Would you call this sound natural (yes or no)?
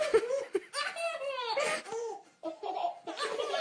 yes